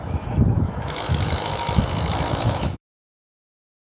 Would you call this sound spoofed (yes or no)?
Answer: yes